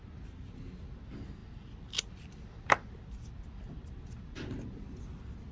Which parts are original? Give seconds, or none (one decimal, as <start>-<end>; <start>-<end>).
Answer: 0.0-5.5